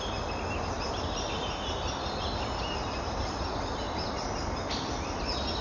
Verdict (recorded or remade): recorded